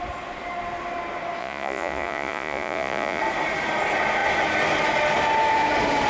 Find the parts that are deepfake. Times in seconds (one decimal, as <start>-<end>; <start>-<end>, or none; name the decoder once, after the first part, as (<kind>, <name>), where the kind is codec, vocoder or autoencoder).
1.4-3.2 (vocoder, Vocos)